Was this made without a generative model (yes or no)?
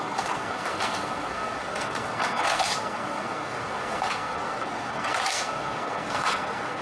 no